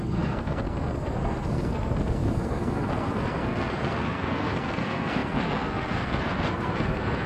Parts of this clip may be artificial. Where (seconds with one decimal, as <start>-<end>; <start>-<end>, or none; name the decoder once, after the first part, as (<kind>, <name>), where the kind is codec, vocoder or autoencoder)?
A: 0.0-7.3 (codec, SNAC)